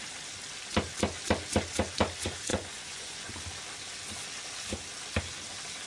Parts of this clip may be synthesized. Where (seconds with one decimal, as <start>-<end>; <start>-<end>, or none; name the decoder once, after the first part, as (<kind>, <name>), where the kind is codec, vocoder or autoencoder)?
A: 2.5-3.3 (vocoder, Vocos)